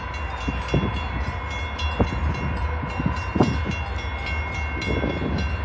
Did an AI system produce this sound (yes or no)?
no